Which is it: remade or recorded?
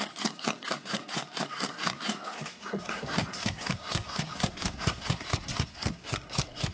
remade